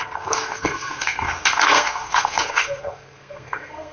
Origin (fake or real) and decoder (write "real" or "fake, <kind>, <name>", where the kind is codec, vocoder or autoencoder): fake, codec, SNAC